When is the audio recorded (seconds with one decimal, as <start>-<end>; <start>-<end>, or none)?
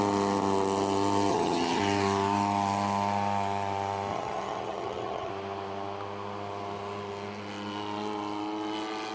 0.0-1.3; 1.8-4.1; 5.3-9.1